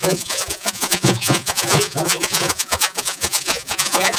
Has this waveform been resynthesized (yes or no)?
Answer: yes